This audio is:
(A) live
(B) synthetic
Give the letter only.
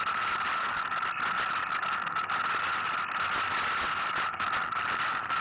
A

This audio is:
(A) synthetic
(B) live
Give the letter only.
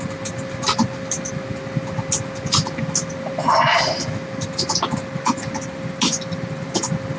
B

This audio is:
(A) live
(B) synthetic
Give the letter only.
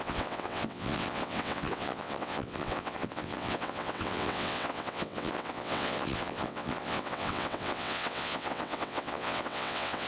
B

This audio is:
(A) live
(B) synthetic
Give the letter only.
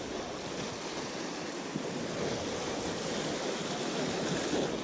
A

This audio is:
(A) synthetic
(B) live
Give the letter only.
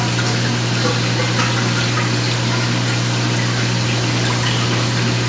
B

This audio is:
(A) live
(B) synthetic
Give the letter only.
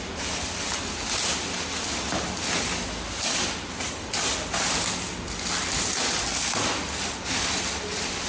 A